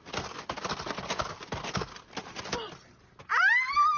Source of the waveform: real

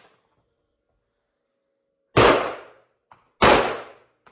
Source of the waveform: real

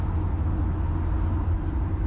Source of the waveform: real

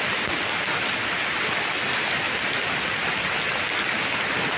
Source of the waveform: real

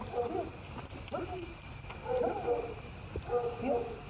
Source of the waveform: real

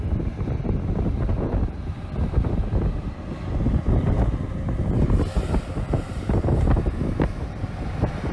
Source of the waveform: real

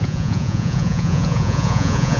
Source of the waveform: fake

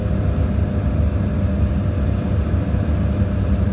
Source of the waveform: real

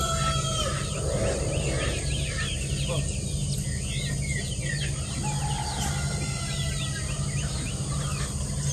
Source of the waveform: real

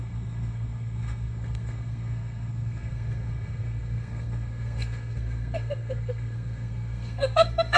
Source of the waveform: fake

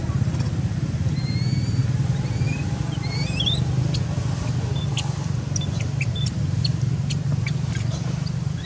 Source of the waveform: real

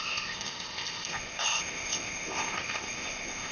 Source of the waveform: fake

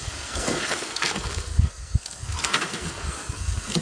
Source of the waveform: fake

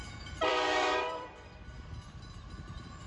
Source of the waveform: fake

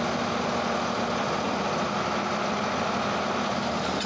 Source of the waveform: real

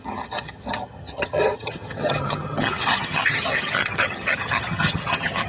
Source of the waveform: fake